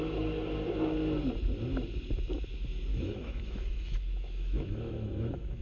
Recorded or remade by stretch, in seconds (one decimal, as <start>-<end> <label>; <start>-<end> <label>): 0.0-2.9 recorded; 2.9-5.6 remade